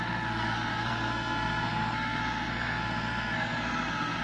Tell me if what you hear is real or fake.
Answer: fake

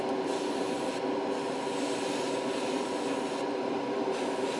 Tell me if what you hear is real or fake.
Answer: real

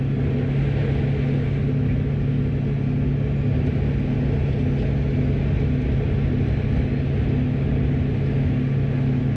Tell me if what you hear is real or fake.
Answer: real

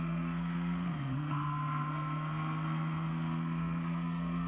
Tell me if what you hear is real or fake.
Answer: fake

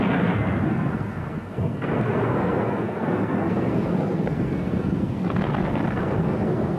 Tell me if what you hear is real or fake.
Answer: fake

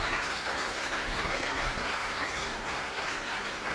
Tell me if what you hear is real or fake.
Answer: fake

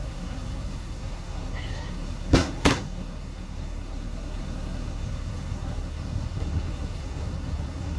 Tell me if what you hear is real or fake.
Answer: fake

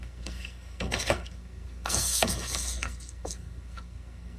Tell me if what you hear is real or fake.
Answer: fake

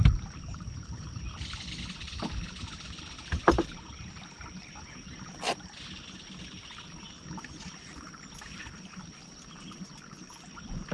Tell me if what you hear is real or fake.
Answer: real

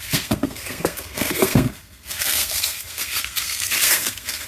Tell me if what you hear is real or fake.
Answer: fake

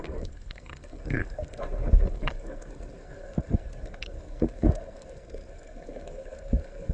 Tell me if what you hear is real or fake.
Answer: fake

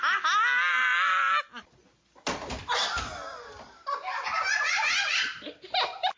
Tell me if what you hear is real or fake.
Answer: real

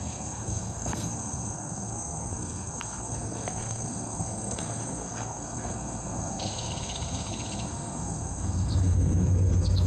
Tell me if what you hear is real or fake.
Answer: fake